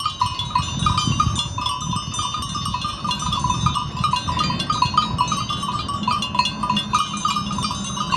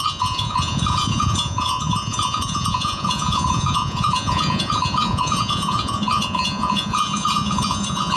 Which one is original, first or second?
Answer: first